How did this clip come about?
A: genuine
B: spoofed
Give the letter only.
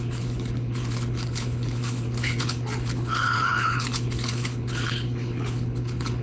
B